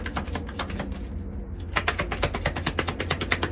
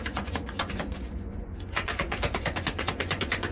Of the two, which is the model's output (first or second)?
second